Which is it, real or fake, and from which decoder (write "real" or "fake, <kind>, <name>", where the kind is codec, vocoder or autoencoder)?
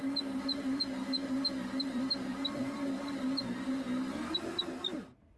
fake, vocoder, BigVGAN v2